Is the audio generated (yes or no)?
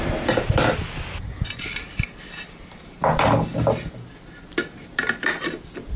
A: no